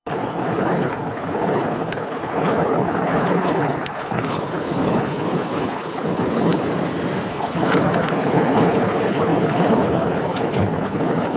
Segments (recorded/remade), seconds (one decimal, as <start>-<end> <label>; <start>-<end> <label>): 0.0-6.7 remade; 6.7-7.3 recorded; 7.3-11.4 remade